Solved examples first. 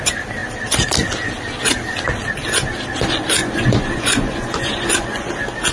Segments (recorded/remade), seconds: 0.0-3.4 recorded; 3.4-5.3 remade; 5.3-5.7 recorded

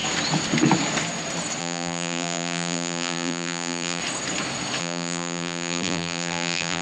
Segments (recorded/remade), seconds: 0.0-1.6 recorded; 1.6-4.0 remade; 4.0-4.8 recorded; 4.8-6.8 remade

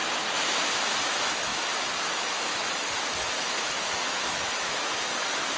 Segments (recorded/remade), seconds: 0.0-1.0 recorded; 1.0-5.6 remade

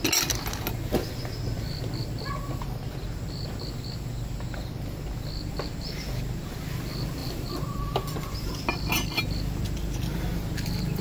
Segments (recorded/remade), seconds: 0.0-7.2 recorded; 7.2-8.5 remade; 8.5-11.0 recorded

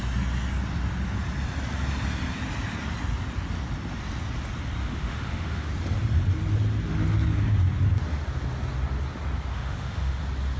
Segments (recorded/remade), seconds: 0.0-4.8 recorded; 4.8-5.7 remade; 5.7-9.5 recorded; 9.5-10.2 remade; 10.2-10.6 recorded

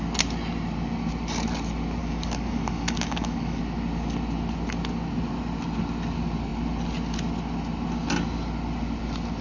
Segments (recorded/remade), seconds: 0.0-2.0 recorded; 2.0-3.6 remade; 3.6-9.4 recorded

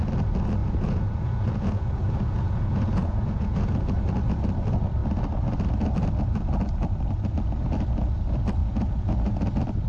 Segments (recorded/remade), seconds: 0.0-0.6 recorded; 0.6-3.8 remade; 3.8-8.6 recorded; 8.6-9.3 remade; 9.3-9.9 recorded